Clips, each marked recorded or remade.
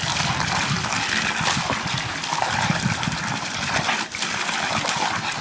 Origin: remade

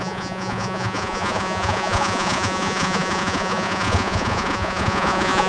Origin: remade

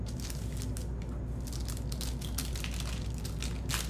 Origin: recorded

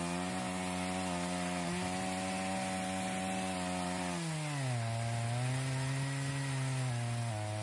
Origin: recorded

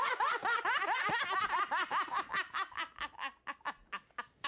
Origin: recorded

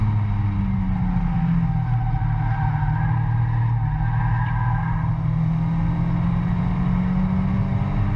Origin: recorded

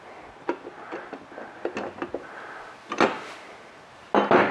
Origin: recorded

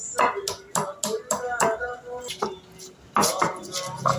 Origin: recorded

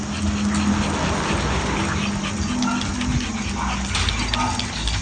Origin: recorded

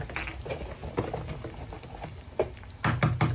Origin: recorded